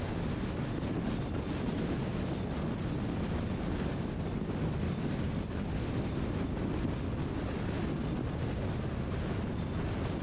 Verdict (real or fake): real